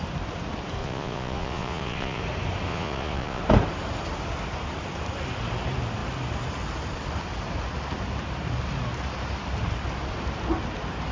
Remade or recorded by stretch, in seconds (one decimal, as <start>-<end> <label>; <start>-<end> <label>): 0.0-0.8 recorded; 0.8-2.2 remade; 2.2-2.7 recorded; 2.7-3.4 remade; 3.4-11.1 recorded

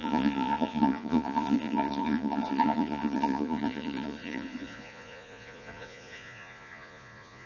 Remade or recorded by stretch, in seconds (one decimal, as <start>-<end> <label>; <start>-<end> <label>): 0.0-7.5 remade

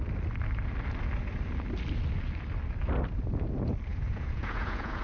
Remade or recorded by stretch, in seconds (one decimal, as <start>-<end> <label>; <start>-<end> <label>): 0.0-3.9 recorded; 3.9-5.0 remade

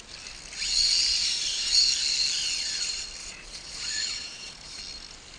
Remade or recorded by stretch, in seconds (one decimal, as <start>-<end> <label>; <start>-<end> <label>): 0.0-1.2 recorded; 1.2-1.8 remade; 1.8-3.2 recorded; 3.2-4.8 remade; 4.8-5.4 recorded